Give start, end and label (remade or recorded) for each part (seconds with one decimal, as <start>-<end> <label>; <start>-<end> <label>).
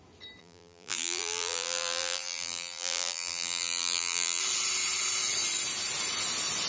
0.0-0.4 recorded; 0.4-4.4 remade; 4.4-6.7 recorded